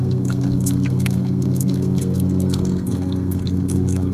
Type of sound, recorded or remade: remade